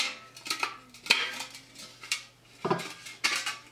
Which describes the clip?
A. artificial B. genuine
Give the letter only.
B